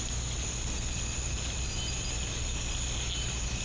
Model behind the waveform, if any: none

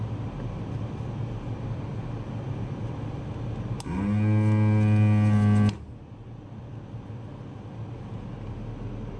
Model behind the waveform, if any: none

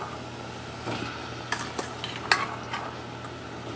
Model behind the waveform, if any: none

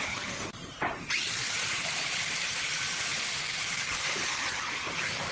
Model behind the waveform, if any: none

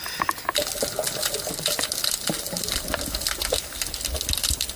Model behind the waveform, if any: none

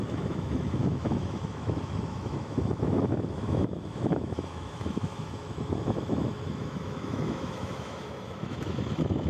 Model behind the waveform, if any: autoencoder, DAC-VAE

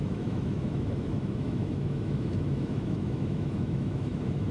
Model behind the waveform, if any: autoencoder, DAC-VAE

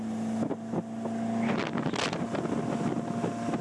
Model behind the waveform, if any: none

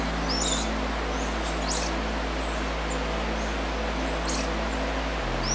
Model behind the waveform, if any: none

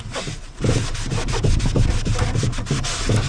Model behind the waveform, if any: none